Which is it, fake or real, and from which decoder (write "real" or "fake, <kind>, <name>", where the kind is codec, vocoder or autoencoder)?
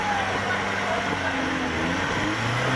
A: real